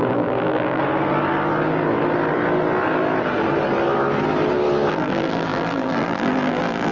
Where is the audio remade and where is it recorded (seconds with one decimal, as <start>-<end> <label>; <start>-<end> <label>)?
0.0-0.8 remade; 0.8-4.9 recorded; 4.9-6.9 remade